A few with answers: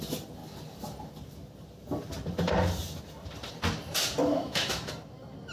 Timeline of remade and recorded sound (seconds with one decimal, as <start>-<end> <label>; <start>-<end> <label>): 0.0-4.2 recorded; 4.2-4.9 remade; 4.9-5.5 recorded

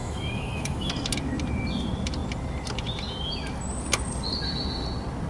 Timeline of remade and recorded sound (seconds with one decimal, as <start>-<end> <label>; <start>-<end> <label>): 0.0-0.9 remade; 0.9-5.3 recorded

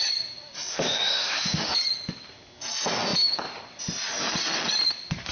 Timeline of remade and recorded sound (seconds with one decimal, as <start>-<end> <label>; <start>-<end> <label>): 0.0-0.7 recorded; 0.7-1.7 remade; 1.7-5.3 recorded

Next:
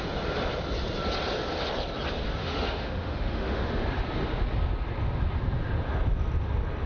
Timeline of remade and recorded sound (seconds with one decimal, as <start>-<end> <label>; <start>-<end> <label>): 0.0-2.4 recorded; 2.4-3.7 remade; 3.7-6.9 recorded

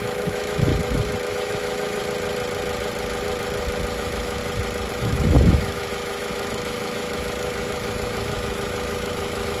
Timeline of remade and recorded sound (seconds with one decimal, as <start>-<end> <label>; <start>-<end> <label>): 0.0-0.7 remade; 0.7-1.3 recorded; 1.3-2.0 remade; 2.0-4.0 recorded; 4.0-4.4 remade; 4.4-4.9 recorded; 4.9-9.6 remade

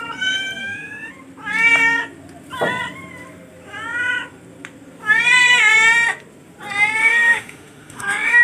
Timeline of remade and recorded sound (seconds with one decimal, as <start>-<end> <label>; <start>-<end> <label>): 0.0-0.6 recorded; 0.6-1.1 remade; 1.1-7.0 recorded; 7.0-8.4 remade

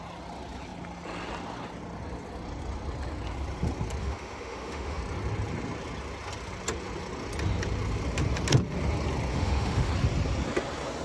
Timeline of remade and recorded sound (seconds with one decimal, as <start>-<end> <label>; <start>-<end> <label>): 0.0-4.0 recorded; 4.0-5.0 remade; 5.0-9.3 recorded; 9.3-9.9 remade; 9.9-11.0 recorded

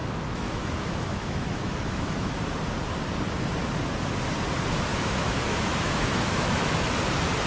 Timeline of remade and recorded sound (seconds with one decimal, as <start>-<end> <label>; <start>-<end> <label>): 0.0-2.4 remade; 2.4-4.9 recorded; 4.9-6.9 remade; 6.9-7.5 recorded